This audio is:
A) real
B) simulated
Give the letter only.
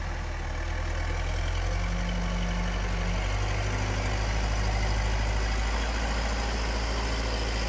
A